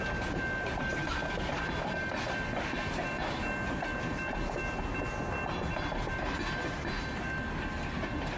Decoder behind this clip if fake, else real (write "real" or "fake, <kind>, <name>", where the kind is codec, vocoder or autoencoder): real